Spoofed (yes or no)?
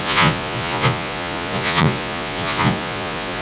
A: yes